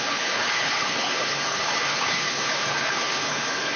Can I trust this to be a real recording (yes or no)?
no